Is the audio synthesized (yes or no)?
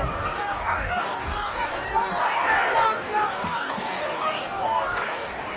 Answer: yes